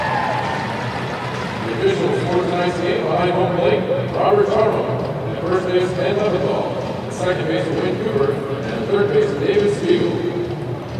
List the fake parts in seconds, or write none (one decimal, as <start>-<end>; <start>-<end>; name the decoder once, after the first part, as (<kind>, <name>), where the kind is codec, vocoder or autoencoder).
none